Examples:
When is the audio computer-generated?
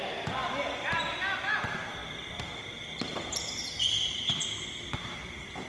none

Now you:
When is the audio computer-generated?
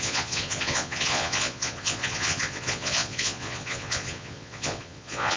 0.0-5.4